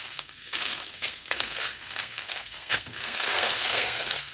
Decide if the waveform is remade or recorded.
remade